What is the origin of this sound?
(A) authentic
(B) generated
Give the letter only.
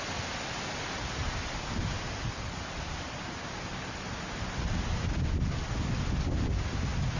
A